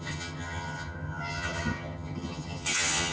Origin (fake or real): fake